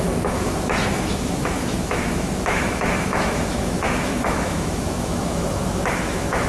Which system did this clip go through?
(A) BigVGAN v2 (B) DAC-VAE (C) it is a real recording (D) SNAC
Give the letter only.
B